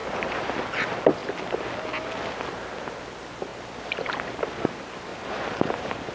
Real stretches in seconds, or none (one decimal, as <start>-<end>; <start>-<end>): 0.5-3.5; 4.3-5.1